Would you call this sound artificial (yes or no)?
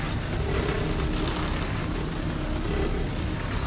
no